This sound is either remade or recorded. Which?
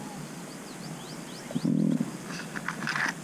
recorded